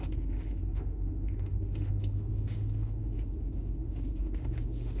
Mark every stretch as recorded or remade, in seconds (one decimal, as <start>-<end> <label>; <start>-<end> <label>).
0.0-5.0 remade